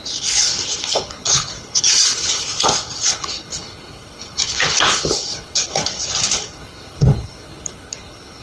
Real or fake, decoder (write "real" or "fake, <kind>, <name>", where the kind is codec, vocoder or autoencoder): fake, codec, HILCodec